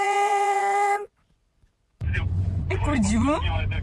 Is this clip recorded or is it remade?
remade